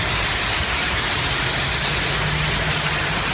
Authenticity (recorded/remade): recorded